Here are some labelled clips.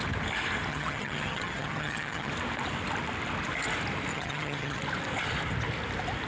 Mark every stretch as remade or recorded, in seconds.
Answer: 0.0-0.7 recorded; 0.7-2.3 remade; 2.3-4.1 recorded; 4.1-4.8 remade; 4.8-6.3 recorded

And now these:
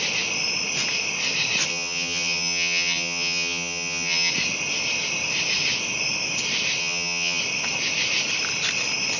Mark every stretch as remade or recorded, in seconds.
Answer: 0.0-1.7 recorded; 1.7-4.3 remade; 4.3-6.8 recorded; 6.8-7.4 remade; 7.4-9.2 recorded

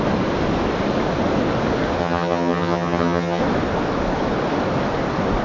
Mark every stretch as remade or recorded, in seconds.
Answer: 0.0-2.0 recorded; 2.0-3.4 remade; 3.4-5.4 recorded

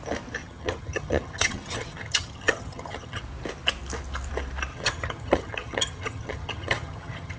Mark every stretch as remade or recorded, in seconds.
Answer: 0.0-0.4 recorded; 0.4-3.2 remade; 3.2-4.7 recorded; 4.7-7.4 remade

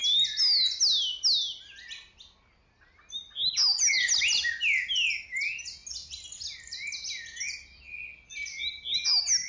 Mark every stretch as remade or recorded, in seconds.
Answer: 0.0-9.5 recorded